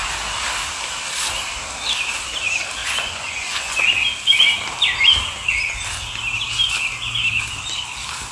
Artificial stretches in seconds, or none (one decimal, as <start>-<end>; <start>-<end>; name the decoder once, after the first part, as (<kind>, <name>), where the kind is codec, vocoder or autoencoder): 2.8-3.9 (vocoder, Vocos)

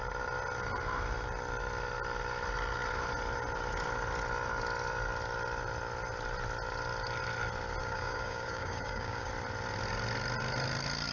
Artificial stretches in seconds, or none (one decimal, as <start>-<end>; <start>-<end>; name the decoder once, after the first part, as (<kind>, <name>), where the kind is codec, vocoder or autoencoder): 7.8-9.3 (codec, DAC)

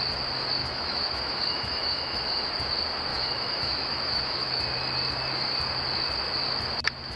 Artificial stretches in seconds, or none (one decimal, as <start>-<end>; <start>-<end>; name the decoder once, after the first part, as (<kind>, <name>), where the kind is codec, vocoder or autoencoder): 0.6-2.4 (autoencoder, DAC-VAE); 3.1-4.6

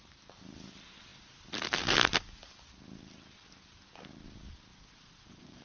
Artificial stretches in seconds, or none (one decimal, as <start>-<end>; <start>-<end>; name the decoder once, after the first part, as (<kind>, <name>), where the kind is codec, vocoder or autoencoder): 4.7-5.6 (vocoder, Vocos)

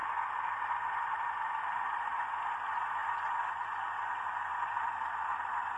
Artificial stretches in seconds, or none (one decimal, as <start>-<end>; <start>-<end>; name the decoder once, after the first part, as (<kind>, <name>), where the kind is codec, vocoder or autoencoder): 0.0-0.7 (vocoder, Vocos); 3.0-4.8

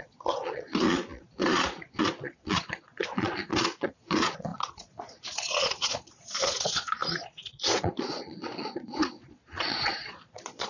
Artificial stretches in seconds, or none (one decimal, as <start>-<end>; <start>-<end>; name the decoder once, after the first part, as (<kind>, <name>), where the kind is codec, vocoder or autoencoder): 0.0-10.7 (vocoder, Vocos)